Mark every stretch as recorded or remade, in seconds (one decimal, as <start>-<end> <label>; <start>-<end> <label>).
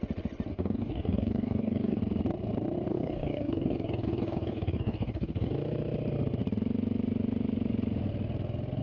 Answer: 0.0-0.5 recorded; 0.5-2.0 remade; 2.0-2.9 recorded; 2.9-5.5 remade; 5.5-8.8 recorded